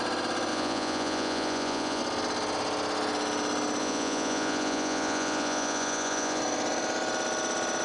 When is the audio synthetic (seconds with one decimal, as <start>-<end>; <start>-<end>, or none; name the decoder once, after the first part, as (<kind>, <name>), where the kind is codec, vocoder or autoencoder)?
0.5-2.0 (vocoder, Vocos); 3.8-6.4